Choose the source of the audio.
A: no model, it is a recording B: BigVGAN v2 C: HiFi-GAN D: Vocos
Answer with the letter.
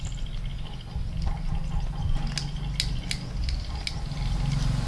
A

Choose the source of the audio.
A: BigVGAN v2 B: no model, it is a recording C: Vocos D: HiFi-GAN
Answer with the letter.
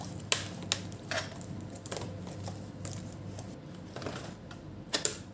B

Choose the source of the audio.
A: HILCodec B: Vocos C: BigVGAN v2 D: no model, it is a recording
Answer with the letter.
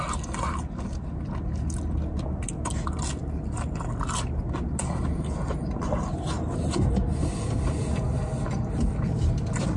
D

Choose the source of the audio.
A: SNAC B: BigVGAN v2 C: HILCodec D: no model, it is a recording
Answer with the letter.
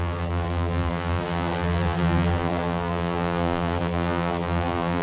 B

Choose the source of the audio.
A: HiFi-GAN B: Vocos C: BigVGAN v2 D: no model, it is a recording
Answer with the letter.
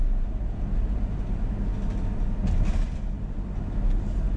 D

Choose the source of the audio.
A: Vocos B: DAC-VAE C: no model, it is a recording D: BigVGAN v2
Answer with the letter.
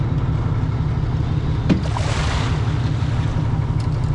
C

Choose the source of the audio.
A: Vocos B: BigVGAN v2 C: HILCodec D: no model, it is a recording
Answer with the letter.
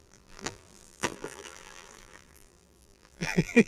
B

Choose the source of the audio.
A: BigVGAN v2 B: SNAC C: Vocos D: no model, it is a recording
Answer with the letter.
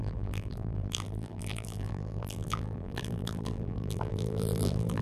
A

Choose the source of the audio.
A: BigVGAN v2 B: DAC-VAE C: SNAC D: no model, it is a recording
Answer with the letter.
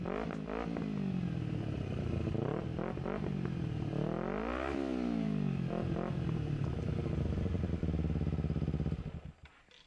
D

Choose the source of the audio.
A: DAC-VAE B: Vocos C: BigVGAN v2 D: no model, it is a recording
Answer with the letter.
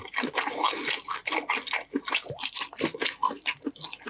D